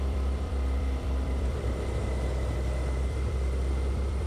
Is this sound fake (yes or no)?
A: yes